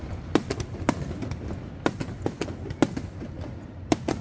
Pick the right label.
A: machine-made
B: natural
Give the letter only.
B